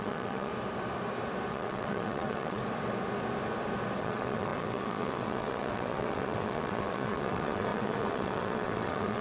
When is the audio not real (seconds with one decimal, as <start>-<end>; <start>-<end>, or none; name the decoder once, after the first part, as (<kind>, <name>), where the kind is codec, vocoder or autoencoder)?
0.0-0.5 (vocoder, WaveNeXt); 1.5-2.6; 4.0-9.2